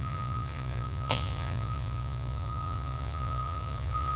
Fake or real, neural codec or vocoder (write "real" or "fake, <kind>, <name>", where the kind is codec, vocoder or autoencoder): fake, vocoder, Vocos